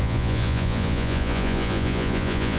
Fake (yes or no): yes